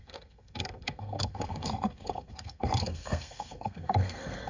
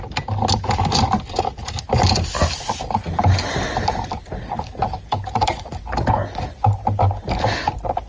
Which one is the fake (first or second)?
first